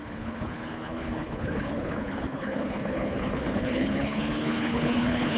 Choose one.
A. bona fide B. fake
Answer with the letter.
B